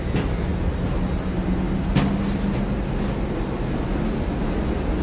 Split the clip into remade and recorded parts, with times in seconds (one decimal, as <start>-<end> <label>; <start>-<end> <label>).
0.0-5.0 recorded